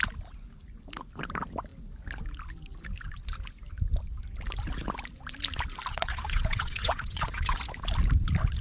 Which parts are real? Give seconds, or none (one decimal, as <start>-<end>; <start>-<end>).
0.0-5.9; 7.6-8.6